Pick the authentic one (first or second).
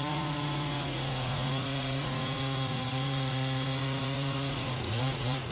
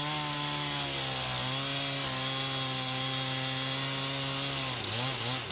second